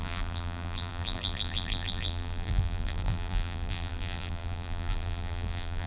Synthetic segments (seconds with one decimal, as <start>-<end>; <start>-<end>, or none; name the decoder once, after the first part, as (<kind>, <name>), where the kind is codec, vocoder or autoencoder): 0.0-5.9 (vocoder, BigVGAN v2)